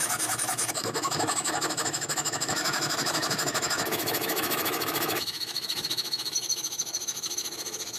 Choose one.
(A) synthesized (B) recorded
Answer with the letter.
A